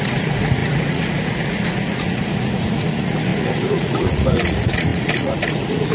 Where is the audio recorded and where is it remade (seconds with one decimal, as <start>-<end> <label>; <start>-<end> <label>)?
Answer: 0.0-5.9 remade